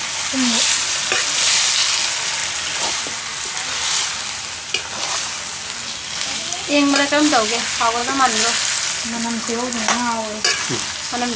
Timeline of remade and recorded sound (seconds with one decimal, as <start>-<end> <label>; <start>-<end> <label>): 0.0-11.4 recorded